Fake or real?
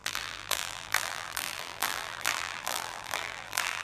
fake